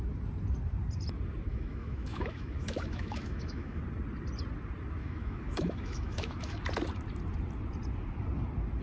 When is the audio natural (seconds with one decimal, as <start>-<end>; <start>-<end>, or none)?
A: 0.0-1.5; 3.8-5.0; 6.6-8.8

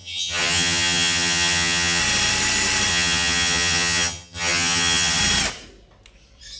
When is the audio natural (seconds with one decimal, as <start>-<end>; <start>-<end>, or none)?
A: 2.0-2.9; 5.2-6.6

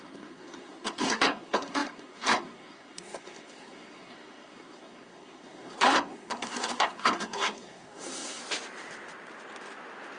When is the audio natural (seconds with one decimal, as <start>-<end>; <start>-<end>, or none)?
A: 8.4-10.2

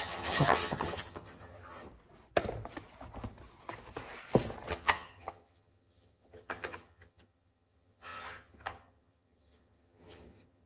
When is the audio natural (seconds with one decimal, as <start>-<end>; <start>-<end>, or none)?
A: 1.9-4.7

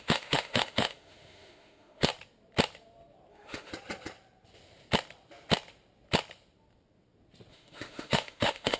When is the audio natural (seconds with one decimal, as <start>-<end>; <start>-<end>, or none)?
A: 2.1-3.3; 3.7-7.5

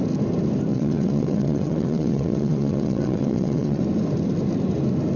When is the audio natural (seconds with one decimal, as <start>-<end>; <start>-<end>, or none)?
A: 0.0-0.7; 3.8-5.2